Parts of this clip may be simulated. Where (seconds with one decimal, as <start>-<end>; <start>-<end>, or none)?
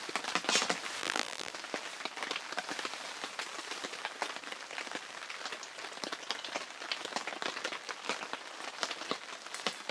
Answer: 1.0-1.5